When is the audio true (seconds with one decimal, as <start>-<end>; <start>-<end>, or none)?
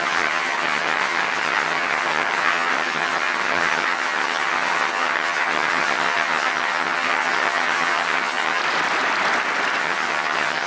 8.6-9.8